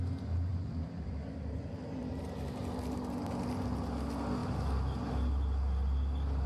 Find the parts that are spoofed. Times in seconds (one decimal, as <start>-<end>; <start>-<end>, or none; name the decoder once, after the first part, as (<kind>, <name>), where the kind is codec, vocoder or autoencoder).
0.5-2.2 (vocoder, BigVGAN v2)